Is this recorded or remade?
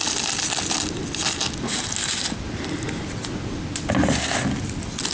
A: recorded